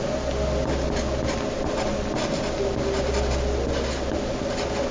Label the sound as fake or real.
real